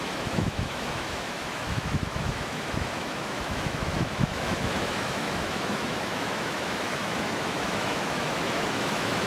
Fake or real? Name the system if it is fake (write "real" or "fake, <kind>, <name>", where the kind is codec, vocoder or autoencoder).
fake, autoencoder, DAC-VAE